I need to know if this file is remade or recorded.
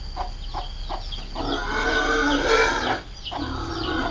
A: recorded